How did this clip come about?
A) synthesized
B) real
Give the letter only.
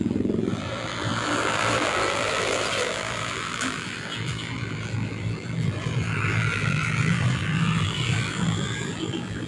A